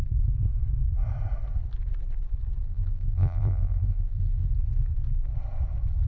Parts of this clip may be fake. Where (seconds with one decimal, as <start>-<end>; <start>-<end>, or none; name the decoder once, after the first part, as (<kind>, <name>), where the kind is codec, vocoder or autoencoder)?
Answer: 2.7-4.5 (vocoder, BigVGAN v2)